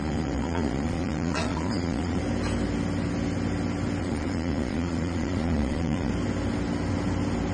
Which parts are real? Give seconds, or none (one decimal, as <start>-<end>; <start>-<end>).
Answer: 2.2-4.0; 6.1-7.5